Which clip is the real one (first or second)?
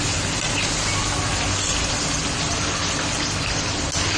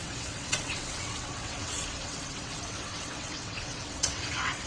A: first